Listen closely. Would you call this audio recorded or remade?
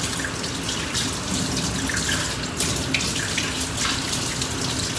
recorded